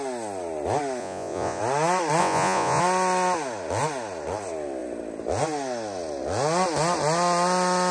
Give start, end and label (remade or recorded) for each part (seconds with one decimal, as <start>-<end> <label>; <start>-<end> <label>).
0.0-1.0 recorded; 1.0-1.6 remade; 1.6-2.2 recorded; 2.2-2.8 remade; 2.8-7.9 recorded